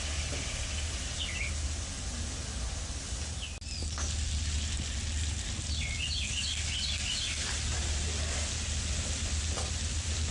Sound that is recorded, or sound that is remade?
recorded